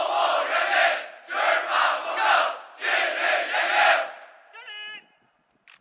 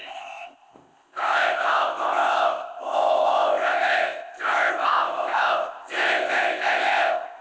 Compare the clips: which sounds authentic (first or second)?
first